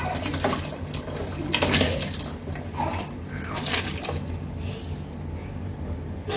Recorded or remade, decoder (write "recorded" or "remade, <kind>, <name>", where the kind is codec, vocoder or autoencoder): recorded